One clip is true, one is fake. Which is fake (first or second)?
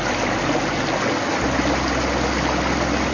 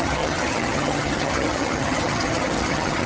second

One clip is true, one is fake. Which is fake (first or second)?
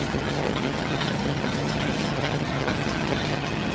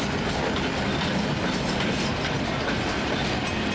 first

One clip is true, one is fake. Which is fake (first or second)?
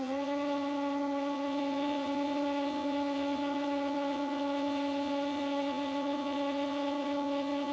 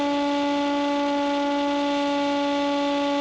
first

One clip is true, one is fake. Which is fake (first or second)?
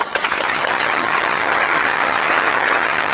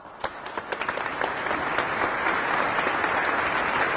first